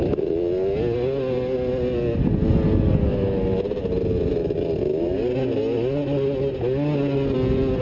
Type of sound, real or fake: real